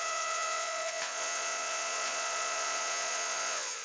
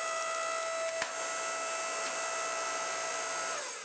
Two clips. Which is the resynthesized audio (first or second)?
first